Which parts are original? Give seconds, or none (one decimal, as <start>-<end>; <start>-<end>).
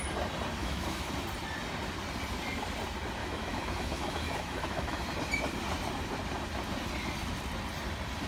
0.0-0.6; 1.1-3.2; 5.0-8.3